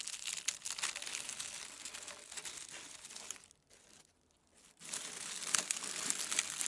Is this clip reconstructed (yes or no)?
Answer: no